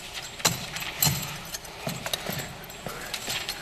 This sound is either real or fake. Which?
real